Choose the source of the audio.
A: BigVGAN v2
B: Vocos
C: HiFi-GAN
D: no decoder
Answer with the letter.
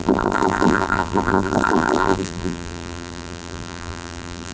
A